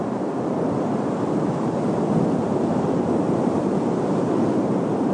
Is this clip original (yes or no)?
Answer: yes